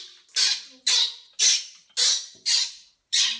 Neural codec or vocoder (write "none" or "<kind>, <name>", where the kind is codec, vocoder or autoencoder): none